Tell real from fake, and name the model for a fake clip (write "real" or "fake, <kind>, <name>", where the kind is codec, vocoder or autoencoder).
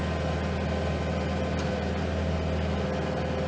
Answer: real